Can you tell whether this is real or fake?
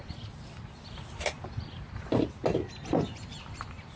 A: real